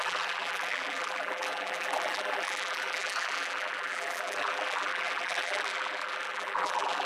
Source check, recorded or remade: remade